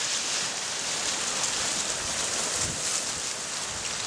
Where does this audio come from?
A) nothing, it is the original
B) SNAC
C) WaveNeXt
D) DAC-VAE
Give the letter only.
A